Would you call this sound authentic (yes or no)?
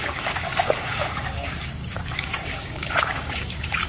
no